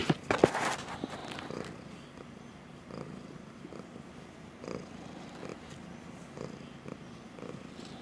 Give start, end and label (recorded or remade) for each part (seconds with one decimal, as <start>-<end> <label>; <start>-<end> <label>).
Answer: 0.0-8.0 recorded